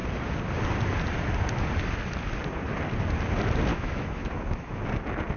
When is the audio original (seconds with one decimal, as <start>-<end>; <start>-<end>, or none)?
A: 0.0-3.7; 4.8-5.4